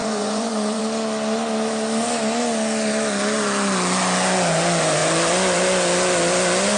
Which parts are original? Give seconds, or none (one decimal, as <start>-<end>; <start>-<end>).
0.8-6.8